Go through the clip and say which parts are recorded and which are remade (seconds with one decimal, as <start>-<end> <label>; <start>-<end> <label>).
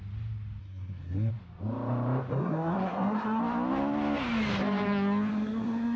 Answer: 0.0-0.6 recorded; 0.6-1.3 remade; 1.3-2.3 recorded; 2.3-3.4 remade; 3.4-5.3 recorded; 5.3-6.0 remade